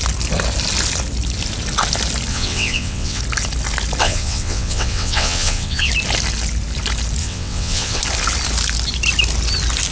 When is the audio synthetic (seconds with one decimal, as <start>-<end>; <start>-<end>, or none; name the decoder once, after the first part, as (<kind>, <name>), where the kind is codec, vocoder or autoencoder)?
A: 2.3-3.2 (vocoder, WaveNeXt); 4.0-5.9; 7.2-8.0